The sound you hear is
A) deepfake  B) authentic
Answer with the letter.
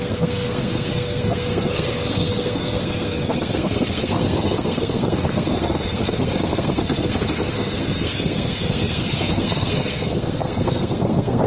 A